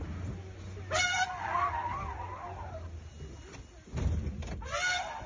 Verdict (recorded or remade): recorded